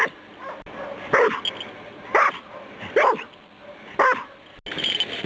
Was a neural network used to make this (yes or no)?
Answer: no